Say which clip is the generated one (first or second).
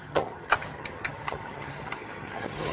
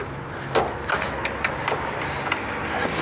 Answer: first